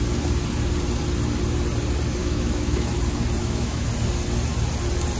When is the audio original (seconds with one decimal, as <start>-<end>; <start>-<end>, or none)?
0.0-2.2; 2.9-3.4; 3.9-5.2